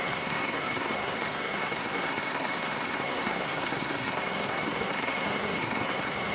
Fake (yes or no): yes